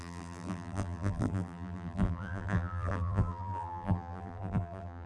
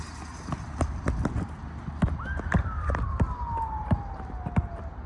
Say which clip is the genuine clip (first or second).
second